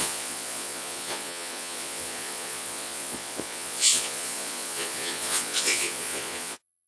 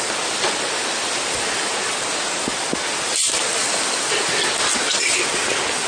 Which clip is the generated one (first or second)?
first